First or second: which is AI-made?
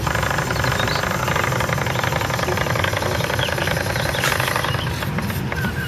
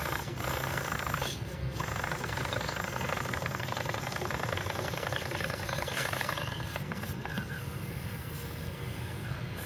second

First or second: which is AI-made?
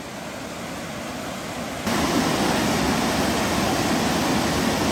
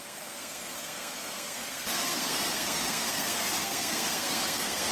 second